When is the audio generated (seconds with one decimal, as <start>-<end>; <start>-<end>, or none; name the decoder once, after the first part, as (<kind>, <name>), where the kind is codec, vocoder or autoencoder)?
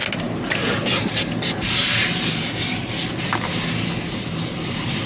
none